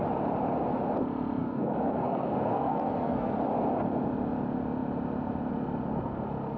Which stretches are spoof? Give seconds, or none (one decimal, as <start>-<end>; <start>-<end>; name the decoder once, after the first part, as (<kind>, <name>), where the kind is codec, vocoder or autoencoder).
1.4-3.3 (codec, SNAC)